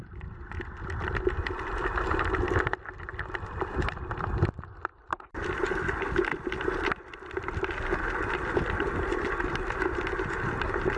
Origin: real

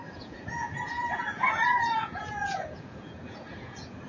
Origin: fake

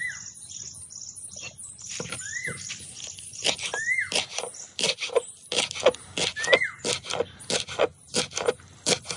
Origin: real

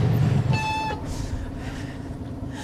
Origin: real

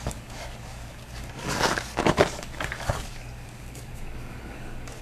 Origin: fake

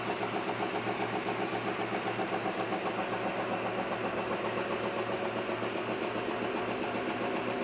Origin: real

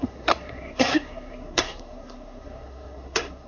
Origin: fake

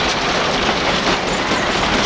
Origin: real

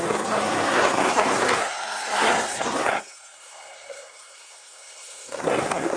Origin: fake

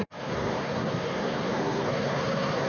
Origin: fake